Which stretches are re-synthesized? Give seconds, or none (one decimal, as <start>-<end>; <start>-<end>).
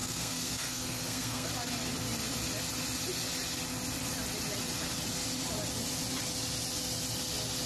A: 0.0-1.5